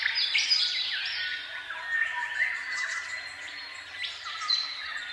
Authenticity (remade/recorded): recorded